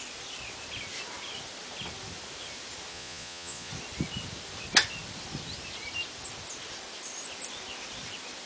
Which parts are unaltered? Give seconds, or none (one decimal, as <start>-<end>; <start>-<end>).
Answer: 0.0-2.9; 3.7-8.5